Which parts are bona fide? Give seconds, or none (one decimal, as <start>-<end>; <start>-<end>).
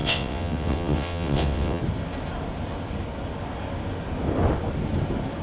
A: 1.8-5.4